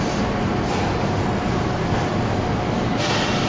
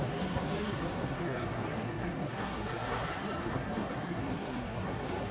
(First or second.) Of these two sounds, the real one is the first